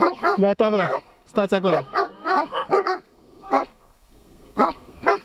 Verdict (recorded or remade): remade